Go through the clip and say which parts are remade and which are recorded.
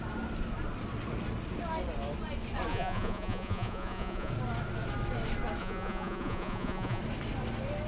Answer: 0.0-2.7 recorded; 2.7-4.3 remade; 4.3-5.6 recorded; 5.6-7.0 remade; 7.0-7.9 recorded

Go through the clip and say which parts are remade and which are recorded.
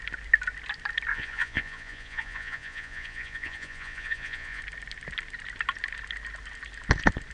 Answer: 0.0-1.1 recorded; 1.1-4.6 remade; 4.6-7.3 recorded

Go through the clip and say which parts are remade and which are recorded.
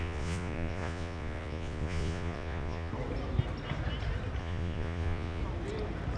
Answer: 0.0-2.9 remade; 2.9-4.4 recorded; 4.4-5.4 remade; 5.4-6.2 recorded